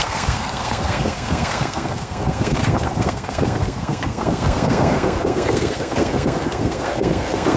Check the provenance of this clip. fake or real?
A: fake